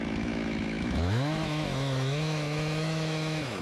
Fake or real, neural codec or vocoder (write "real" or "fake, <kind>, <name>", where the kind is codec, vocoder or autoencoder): fake, autoencoder, DAC-VAE